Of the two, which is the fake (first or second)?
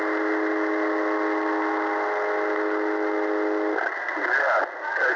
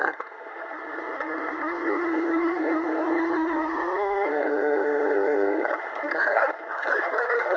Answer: second